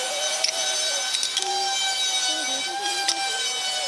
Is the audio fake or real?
real